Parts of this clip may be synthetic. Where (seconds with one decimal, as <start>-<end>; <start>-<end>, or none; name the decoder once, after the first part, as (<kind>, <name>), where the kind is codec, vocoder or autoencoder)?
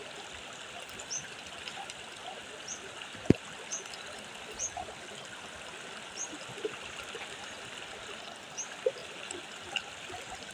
none